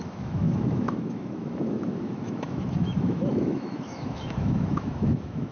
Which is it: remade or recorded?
remade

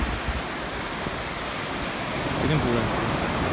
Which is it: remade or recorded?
recorded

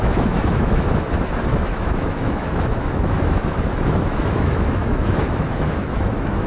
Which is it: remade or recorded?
remade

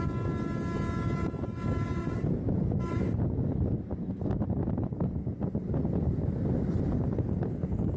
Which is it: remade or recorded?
recorded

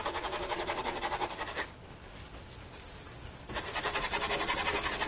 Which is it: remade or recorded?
recorded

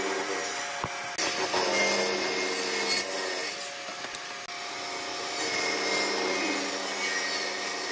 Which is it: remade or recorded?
recorded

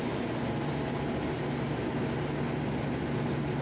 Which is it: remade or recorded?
recorded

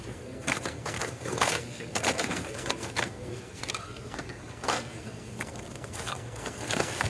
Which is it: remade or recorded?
remade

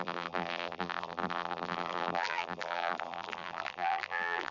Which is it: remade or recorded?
remade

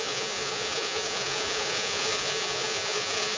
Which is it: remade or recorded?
remade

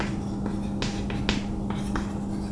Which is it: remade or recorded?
recorded